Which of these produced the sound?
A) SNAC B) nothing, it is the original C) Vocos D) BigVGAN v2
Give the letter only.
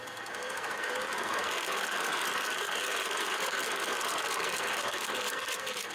A